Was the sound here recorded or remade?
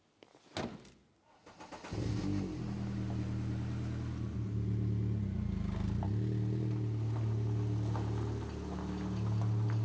recorded